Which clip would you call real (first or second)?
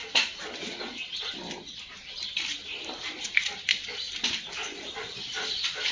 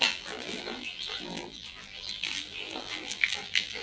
first